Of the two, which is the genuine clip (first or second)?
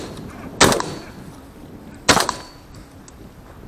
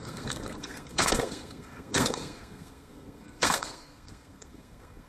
first